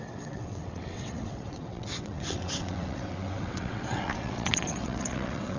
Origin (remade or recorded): remade